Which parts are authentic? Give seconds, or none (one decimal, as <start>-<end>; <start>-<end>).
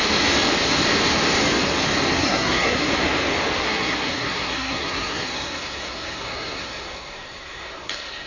0.0-2.2; 2.9-3.6